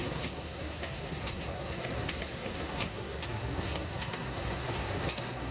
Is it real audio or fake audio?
fake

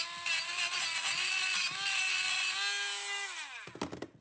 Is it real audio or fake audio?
real